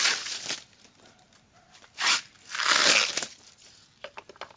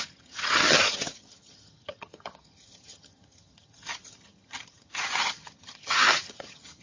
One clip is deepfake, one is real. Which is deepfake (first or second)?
second